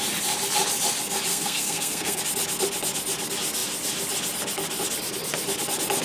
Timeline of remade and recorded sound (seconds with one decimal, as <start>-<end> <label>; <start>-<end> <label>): 0.0-1.3 recorded; 1.3-2.2 remade; 2.2-6.0 recorded